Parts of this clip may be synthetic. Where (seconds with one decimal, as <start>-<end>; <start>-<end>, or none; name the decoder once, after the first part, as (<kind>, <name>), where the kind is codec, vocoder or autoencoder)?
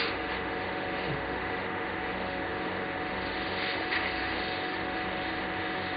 0.0-6.0 (autoencoder, DAC-VAE)